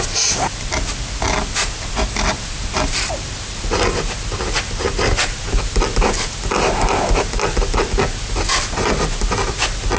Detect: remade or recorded recorded